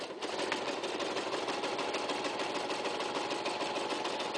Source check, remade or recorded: recorded